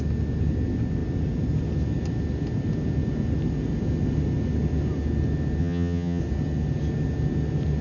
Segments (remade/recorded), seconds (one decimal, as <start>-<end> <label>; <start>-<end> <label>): 0.0-5.6 recorded; 5.6-6.2 remade; 6.2-7.8 recorded